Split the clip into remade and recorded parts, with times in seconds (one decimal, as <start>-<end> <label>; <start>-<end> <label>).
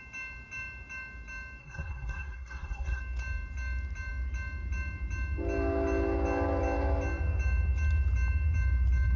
0.0-1.6 recorded; 1.6-3.0 remade; 3.0-9.2 recorded